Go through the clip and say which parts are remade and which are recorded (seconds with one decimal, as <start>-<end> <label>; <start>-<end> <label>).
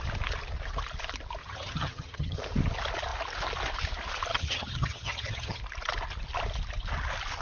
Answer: 0.0-1.4 recorded; 1.4-2.4 remade; 2.4-4.3 recorded; 4.3-5.6 remade; 5.6-7.4 recorded